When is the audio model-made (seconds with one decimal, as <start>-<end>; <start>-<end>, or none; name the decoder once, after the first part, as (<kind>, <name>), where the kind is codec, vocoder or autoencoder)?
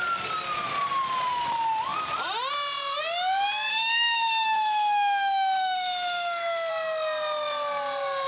3.7-6.7 (autoencoder, DAC-VAE)